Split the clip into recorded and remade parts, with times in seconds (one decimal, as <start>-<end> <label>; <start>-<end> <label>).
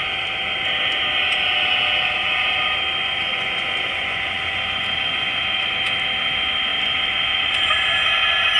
0.0-3.0 recorded; 3.0-5.4 remade; 5.4-8.6 recorded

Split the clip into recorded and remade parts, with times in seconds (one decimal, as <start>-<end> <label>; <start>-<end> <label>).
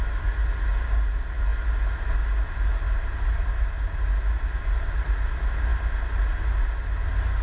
0.0-7.4 recorded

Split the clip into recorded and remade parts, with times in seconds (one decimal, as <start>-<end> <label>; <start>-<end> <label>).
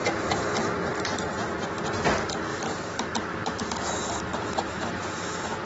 0.0-1.6 remade; 1.6-2.5 recorded; 2.5-3.1 remade; 3.1-4.3 recorded; 4.3-4.9 remade; 4.9-5.7 recorded